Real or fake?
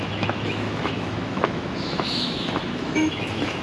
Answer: fake